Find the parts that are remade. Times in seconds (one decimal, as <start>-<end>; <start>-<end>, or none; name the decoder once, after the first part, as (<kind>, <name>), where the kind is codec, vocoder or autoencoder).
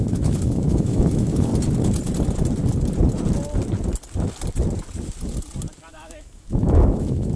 0.0-1.5 (autoencoder, DAC-VAE); 5.9-7.4